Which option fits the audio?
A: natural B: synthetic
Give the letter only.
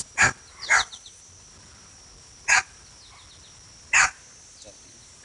A